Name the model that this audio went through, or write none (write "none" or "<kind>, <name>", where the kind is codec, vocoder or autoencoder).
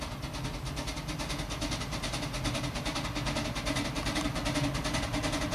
none